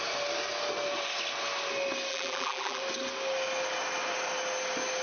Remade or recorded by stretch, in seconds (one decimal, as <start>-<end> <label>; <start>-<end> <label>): 0.0-2.1 recorded; 2.1-2.8 remade; 2.8-5.0 recorded